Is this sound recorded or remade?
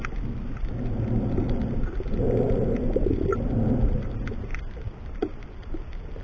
recorded